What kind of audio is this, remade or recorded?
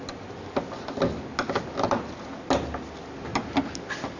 recorded